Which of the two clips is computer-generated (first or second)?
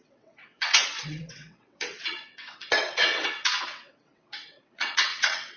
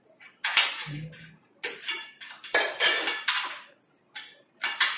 first